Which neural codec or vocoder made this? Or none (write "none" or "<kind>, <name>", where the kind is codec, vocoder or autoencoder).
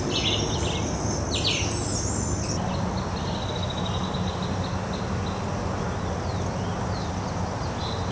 none